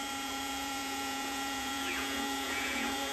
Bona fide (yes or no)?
no